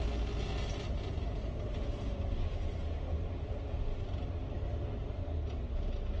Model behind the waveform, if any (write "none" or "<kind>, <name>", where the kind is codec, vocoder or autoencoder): none